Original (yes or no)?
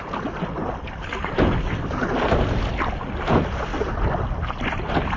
yes